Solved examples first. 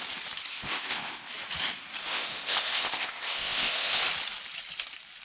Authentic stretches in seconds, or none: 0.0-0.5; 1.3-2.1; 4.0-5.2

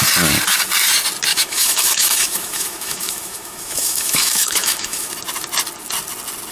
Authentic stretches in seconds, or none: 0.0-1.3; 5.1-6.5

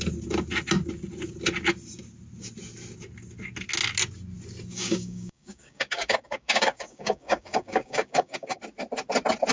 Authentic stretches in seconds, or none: 0.0-4.7; 8.6-9.5

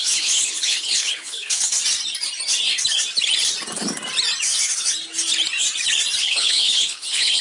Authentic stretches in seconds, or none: 1.8-6.2

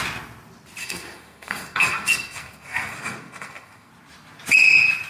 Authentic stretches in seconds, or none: 0.0-0.8; 3.9-5.1

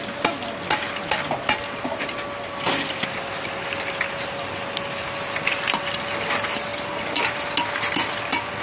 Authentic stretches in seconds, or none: 0.0-8.6

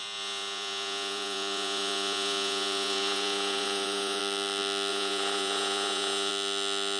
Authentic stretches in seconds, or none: 4.2-4.9; 6.3-7.0

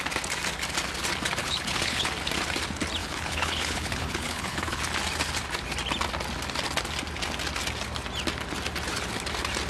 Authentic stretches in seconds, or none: 0.0-1.4; 2.1-3.0; 4.8-9.7